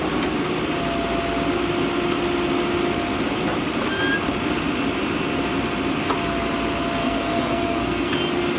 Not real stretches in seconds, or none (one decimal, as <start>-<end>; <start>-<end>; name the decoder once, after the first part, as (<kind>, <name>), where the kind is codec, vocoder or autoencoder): 7.0-8.1 (codec, SNAC)